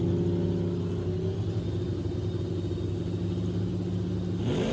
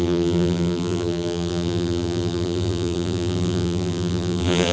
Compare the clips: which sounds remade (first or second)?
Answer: second